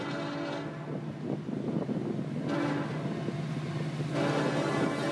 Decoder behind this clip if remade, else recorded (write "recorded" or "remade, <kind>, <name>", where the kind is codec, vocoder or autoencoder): recorded